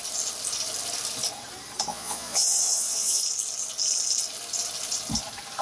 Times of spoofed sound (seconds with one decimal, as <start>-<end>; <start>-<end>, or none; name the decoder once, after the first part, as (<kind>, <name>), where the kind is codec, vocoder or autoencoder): 1.9-3.2 (vocoder, Vocos)